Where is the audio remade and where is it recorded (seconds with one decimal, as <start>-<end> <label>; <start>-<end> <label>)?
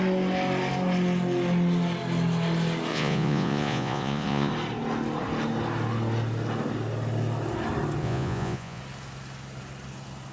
0.0-2.9 recorded; 2.9-4.5 remade; 4.5-8.0 recorded; 8.0-8.8 remade; 8.8-10.3 recorded